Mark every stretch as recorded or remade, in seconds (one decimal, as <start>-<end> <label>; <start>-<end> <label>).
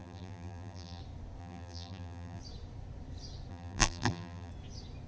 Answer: 0.0-1.0 remade; 1.0-1.4 recorded; 1.4-2.4 remade; 2.4-3.5 recorded; 3.5-4.5 remade; 4.5-5.1 recorded